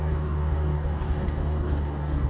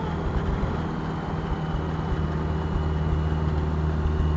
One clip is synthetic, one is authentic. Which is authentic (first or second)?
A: second